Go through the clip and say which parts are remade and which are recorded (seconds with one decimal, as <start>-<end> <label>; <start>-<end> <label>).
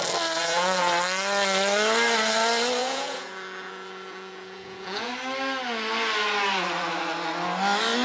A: 0.0-0.4 recorded; 0.4-0.9 remade; 0.9-2.8 recorded; 2.8-5.1 remade; 5.1-8.0 recorded